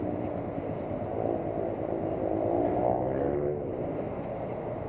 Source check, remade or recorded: recorded